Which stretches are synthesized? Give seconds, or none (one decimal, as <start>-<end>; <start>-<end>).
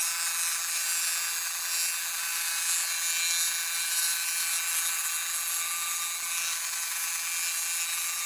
none